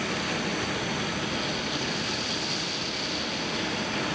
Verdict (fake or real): real